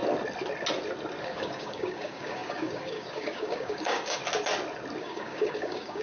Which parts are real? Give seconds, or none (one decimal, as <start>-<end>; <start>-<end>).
0.0-1.2; 4.2-5.0